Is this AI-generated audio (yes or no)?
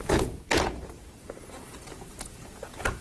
yes